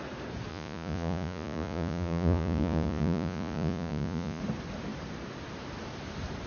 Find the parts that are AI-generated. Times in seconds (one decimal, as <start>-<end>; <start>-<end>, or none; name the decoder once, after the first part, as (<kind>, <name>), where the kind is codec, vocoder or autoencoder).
0.5-4.4 (vocoder, Vocos)